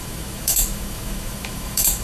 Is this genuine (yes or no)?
no